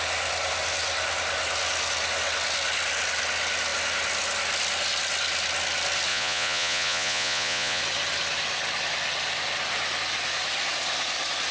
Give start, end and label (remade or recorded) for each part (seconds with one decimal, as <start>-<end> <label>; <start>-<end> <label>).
0.0-6.1 recorded; 6.1-7.8 remade; 7.8-11.5 recorded